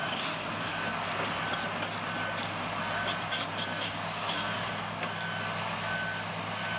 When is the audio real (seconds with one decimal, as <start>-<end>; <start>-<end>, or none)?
0.7-3.7; 4.7-6.8